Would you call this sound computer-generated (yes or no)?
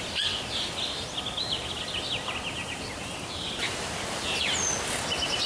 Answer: no